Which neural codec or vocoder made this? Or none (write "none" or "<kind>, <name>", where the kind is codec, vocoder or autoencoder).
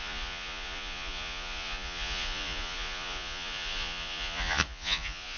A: vocoder, Vocos